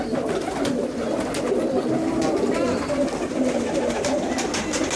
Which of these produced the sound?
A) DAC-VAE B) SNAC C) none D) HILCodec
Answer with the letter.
C